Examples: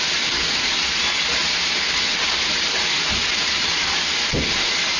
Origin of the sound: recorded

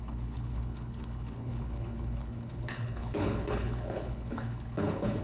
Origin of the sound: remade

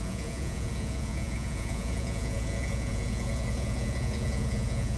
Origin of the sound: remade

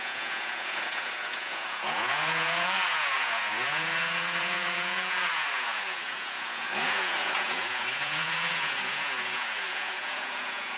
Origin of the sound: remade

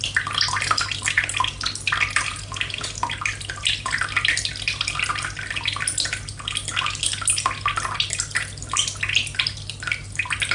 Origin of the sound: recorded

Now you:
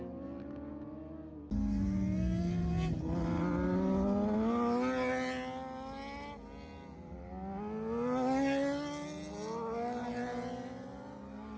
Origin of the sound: recorded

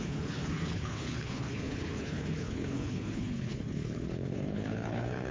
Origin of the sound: remade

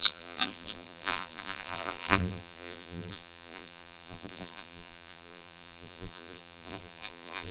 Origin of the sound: remade